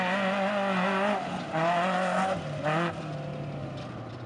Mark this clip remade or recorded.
recorded